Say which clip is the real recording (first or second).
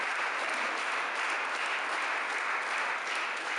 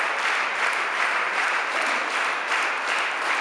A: first